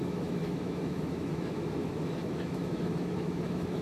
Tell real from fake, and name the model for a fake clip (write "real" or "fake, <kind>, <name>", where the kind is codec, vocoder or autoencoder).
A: fake, autoencoder, DAC-VAE